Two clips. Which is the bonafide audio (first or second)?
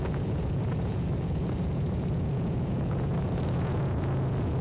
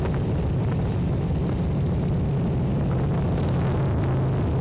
second